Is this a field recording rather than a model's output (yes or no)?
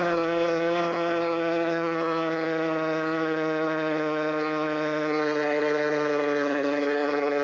no